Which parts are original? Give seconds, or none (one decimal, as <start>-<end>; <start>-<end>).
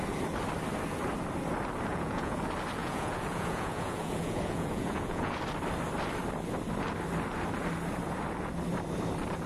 0.0-1.9; 2.4-2.8; 5.4-9.5